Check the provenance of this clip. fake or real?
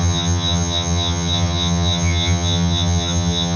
fake